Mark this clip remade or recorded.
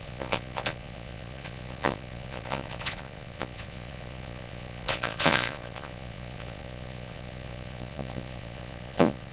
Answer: remade